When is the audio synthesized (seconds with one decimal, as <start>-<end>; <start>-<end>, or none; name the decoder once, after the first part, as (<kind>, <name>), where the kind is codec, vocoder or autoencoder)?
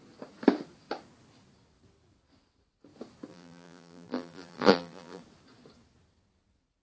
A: 3.3-5.2 (vocoder, BigVGAN v2)